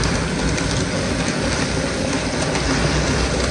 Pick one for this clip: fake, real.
real